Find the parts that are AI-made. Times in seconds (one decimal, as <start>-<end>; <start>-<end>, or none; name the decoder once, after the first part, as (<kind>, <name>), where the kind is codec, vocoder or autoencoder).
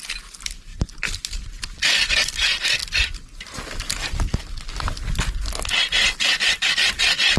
none